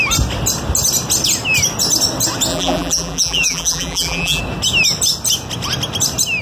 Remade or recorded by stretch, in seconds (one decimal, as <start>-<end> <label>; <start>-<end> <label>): 0.0-2.5 recorded; 2.5-4.4 remade; 4.4-6.4 recorded